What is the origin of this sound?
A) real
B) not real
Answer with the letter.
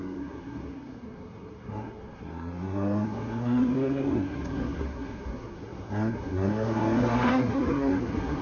B